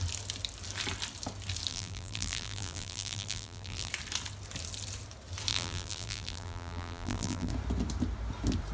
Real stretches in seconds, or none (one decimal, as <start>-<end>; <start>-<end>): 0.0-1.7; 3.9-5.5; 7.5-8.7